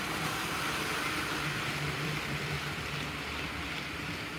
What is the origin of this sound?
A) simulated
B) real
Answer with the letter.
B